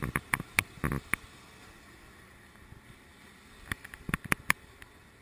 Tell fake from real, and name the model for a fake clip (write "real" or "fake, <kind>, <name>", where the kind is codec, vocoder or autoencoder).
real